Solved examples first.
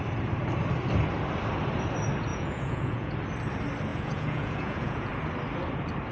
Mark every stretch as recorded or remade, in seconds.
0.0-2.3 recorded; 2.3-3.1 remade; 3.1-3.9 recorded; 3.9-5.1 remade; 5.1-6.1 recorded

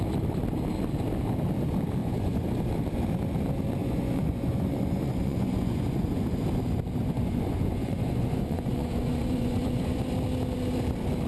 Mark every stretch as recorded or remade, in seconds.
0.0-2.0 recorded; 2.0-2.7 remade; 2.7-3.8 recorded; 3.8-6.4 remade; 6.4-7.0 recorded; 7.0-10.0 remade; 10.0-11.3 recorded

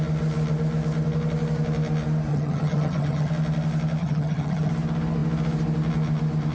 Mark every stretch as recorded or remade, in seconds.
0.0-2.3 recorded; 2.3-3.3 remade; 3.3-4.0 recorded; 4.0-4.7 remade; 4.7-6.5 recorded

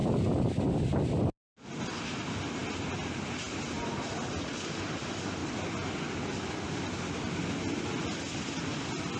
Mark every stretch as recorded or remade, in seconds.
0.0-9.2 recorded

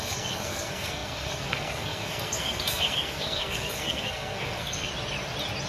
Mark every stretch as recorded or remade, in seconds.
0.0-4.9 remade; 4.9-5.7 recorded

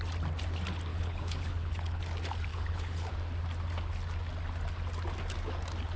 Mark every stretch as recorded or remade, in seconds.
0.0-0.9 recorded; 0.9-2.0 remade; 2.0-2.5 recorded; 2.5-3.1 remade; 3.1-6.0 recorded

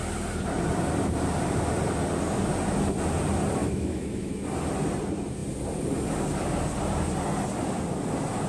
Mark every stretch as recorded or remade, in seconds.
0.0-3.6 recorded; 3.6-4.3 remade; 4.3-8.5 recorded